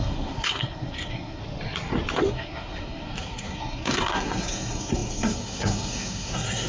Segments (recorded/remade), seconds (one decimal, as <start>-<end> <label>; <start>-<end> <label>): 0.0-1.4 remade; 1.4-2.3 recorded; 2.3-6.7 remade